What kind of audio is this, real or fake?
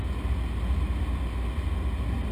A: real